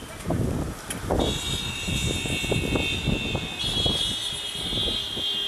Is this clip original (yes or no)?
yes